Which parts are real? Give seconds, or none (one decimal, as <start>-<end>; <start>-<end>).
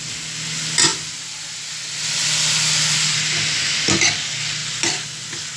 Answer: 0.0-5.6